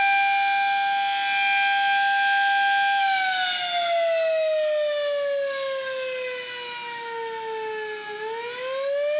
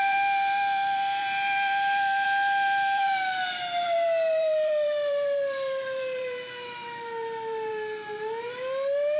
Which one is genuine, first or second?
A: first